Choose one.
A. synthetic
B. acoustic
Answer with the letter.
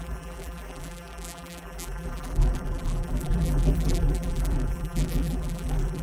A